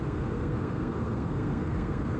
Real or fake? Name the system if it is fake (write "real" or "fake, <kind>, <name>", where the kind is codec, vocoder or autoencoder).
fake, codec, SNAC